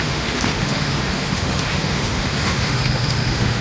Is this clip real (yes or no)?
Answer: no